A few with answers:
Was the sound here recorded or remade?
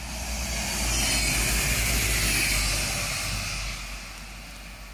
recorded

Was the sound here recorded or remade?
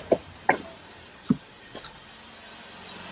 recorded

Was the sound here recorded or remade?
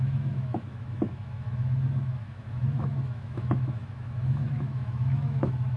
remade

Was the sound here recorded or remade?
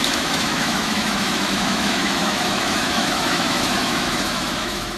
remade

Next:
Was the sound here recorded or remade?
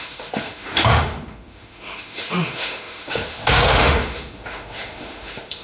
remade